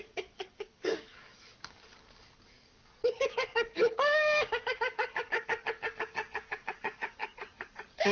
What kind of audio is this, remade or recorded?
remade